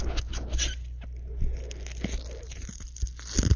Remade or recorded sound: recorded